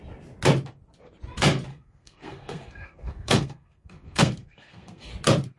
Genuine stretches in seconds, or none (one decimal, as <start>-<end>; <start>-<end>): 0.0-1.7; 5.1-5.6